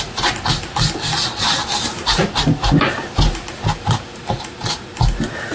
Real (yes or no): yes